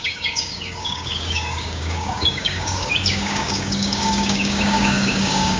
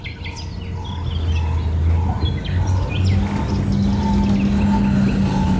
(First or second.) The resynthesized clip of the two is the first